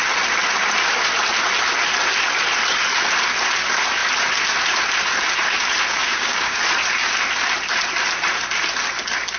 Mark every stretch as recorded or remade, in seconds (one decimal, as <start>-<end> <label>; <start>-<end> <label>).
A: 0.0-6.0 recorded; 6.0-6.6 remade; 6.6-9.4 recorded